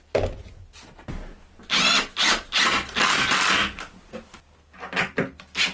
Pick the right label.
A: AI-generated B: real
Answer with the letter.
B